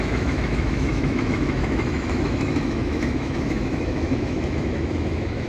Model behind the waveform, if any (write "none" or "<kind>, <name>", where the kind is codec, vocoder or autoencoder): autoencoder, DAC-VAE